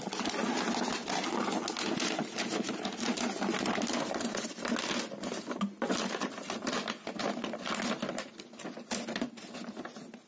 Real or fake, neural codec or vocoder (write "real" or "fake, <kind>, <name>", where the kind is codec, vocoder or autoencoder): real